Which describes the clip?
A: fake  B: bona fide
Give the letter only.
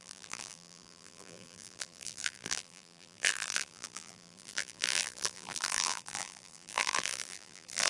A